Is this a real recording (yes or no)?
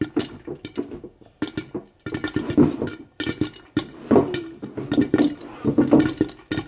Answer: yes